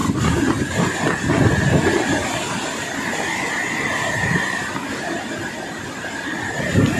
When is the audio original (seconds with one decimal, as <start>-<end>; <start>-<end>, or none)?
0.0-7.0